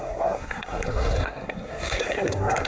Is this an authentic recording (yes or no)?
no